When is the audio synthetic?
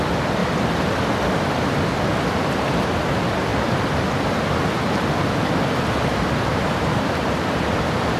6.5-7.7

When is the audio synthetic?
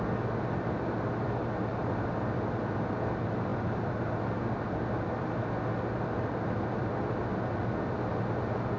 none